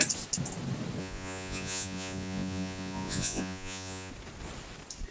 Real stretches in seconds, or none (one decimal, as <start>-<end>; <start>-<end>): 0.0-1.0; 4.1-5.1